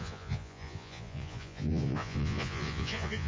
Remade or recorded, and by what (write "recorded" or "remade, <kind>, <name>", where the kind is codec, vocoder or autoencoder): remade, vocoder, Vocos